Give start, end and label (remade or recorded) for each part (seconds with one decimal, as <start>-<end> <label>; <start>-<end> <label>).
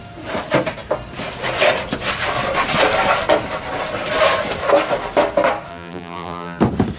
0.0-5.7 recorded; 5.7-6.6 remade; 6.6-7.0 recorded